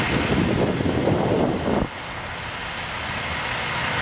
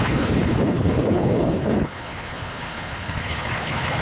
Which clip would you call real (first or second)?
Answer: first